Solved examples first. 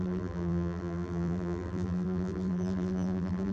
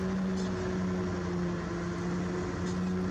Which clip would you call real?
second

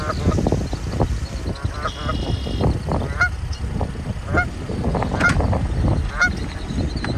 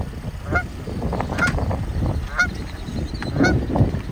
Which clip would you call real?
first